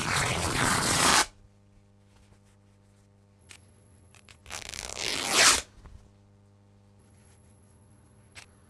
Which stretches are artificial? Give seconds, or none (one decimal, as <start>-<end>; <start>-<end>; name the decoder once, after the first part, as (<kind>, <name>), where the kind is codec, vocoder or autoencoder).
0.0-1.1 (vocoder, Vocos); 3.4-4.4; 7.0-8.7